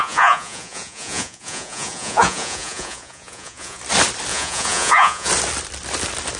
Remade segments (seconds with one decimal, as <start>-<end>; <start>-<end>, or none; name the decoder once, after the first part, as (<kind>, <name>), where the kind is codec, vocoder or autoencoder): 0.0-3.8 (vocoder, Vocos); 4.3-5.3